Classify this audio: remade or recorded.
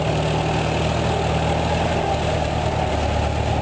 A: recorded